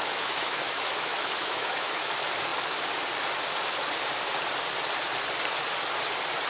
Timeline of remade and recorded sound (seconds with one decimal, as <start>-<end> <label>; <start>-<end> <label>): 0.0-2.1 remade; 2.1-6.5 recorded